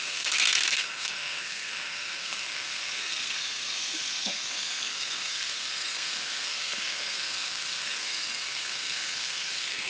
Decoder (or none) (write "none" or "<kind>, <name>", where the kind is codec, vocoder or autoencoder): codec, SNAC